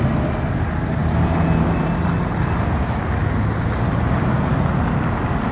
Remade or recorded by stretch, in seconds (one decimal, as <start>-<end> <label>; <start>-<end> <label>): 0.0-1.0 recorded; 1.0-3.1 remade; 3.1-5.5 recorded